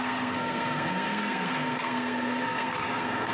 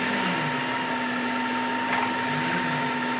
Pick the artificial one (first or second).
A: first